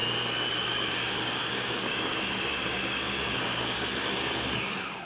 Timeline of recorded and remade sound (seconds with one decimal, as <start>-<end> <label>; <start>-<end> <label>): 0.0-0.5 recorded; 0.5-5.1 remade